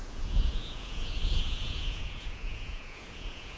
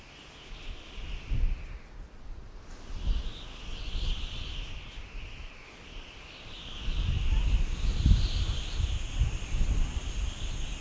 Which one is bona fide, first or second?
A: second